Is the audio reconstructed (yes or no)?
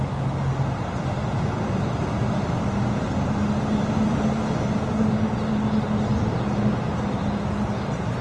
no